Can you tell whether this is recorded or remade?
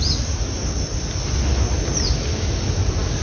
recorded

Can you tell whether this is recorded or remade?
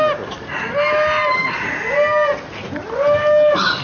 recorded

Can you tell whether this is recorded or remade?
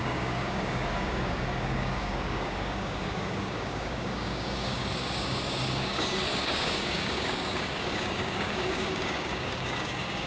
remade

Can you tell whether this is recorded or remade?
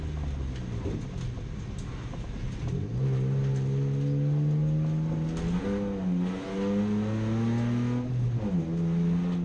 recorded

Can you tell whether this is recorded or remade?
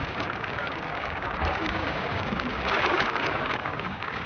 remade